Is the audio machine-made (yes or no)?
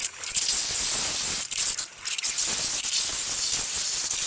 no